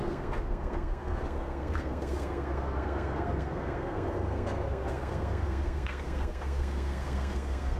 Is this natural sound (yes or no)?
no